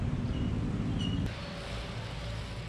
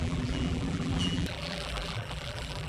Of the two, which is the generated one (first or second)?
second